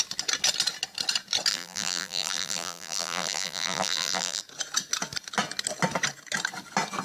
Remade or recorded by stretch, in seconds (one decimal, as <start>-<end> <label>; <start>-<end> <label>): 0.0-1.5 recorded; 1.5-4.4 remade; 4.4-7.0 recorded